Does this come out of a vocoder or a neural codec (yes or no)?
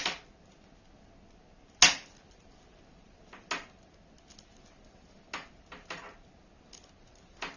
no